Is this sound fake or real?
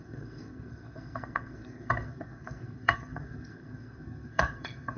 fake